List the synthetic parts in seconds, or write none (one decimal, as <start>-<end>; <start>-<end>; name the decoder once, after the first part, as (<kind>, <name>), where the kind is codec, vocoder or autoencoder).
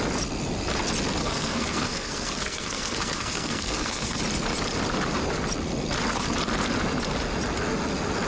1.2-4.2 (codec, SNAC)